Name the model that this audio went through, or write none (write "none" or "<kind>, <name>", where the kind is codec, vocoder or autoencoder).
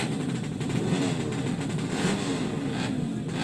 none